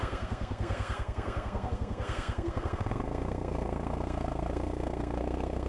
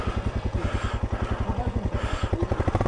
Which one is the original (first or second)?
second